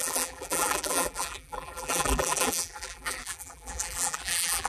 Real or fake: fake